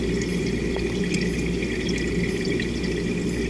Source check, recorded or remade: recorded